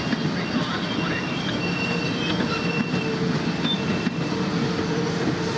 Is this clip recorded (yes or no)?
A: yes